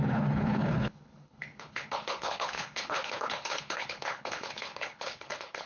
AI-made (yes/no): yes